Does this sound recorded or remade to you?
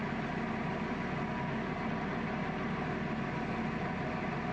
recorded